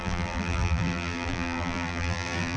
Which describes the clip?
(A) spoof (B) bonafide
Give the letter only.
A